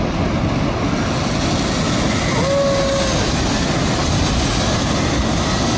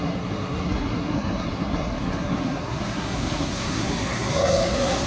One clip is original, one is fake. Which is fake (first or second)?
second